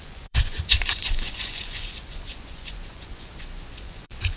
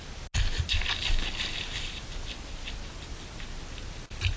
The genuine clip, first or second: second